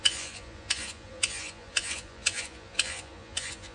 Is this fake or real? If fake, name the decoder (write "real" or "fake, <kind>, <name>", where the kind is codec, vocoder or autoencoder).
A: fake, vocoder, Vocos